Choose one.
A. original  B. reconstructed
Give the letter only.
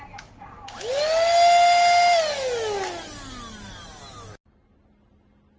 A